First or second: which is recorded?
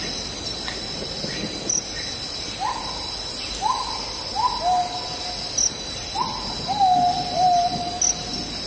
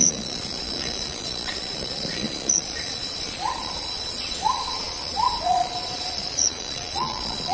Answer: first